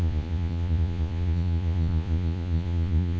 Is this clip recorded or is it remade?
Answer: remade